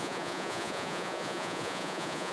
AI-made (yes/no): yes